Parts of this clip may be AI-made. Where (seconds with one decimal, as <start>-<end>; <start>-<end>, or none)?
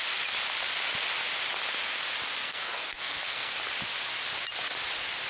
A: 2.4-3.6